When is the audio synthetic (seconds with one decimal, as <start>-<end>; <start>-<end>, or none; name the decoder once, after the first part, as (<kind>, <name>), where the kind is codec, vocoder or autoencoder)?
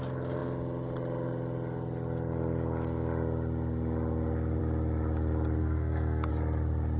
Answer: 5.6-6.3 (codec, SNAC)